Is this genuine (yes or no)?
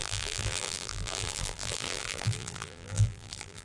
no